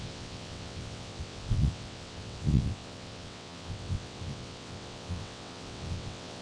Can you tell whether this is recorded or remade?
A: remade